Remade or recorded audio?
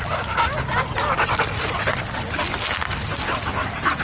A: recorded